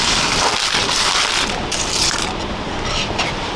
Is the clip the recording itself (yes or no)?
no